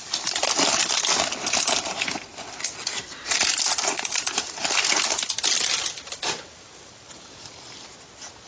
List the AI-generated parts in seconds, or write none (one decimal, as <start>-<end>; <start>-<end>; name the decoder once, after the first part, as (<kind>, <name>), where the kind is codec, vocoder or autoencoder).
none